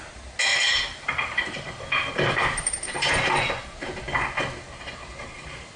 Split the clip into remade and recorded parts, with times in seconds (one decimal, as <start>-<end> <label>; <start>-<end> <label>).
0.0-0.5 recorded; 0.5-4.0 remade; 4.0-5.8 recorded